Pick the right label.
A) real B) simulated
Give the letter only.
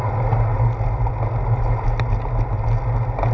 A